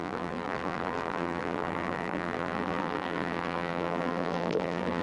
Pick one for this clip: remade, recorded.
remade